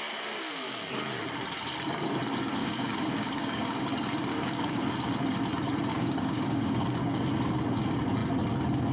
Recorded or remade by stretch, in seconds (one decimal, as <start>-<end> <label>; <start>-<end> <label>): 0.0-2.6 recorded; 2.6-3.8 remade; 3.8-4.3 recorded; 4.3-4.8 remade; 4.8-5.9 recorded; 5.9-7.3 remade; 7.3-8.9 recorded